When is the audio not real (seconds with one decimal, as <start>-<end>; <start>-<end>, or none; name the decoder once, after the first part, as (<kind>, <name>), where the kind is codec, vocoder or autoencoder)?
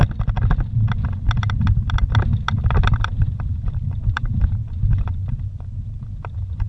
3.0-6.7 (vocoder, BigVGAN v2)